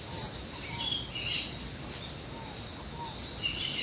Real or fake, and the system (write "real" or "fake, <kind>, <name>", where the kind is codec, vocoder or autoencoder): real